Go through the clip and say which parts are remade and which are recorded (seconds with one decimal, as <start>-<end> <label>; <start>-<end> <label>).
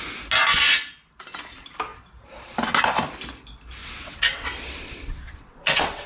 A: 0.0-3.8 recorded; 3.8-6.1 remade